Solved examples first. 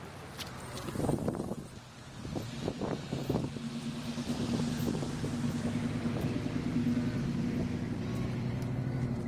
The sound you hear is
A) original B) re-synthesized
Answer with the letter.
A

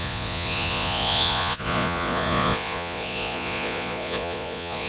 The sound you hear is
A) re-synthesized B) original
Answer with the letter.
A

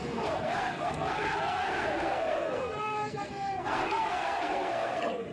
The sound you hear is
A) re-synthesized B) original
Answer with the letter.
A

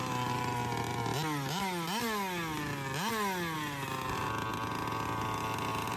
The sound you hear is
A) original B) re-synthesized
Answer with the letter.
A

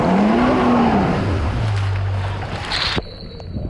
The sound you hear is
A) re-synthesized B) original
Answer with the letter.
B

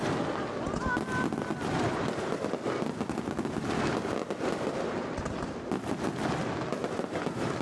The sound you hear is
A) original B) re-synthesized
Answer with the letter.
A